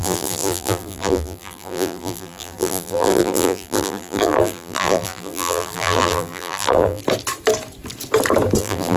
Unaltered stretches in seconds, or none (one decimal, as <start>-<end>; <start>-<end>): 7.0-8.6